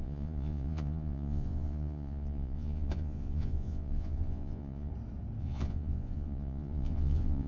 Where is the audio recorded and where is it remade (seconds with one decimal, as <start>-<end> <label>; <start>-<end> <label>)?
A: 0.0-4.9 remade; 4.9-5.4 recorded; 5.4-7.5 remade